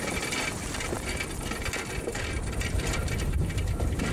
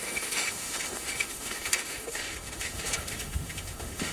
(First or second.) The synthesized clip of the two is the second